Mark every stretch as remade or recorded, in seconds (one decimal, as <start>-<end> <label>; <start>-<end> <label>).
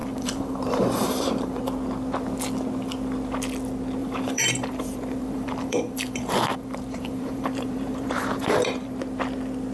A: 0.0-1.6 remade; 1.6-4.0 recorded; 4.0-9.0 remade; 9.0-9.7 recorded